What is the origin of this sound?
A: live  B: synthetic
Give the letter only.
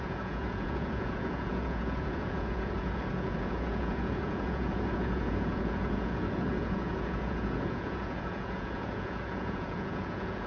B